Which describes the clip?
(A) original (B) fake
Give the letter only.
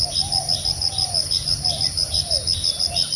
A